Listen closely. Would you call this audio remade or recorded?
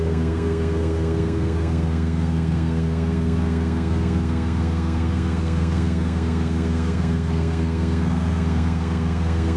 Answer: remade